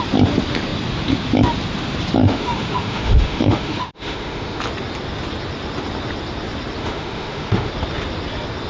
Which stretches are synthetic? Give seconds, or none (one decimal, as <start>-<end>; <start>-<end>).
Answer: 2.2-4.6; 6.8-7.7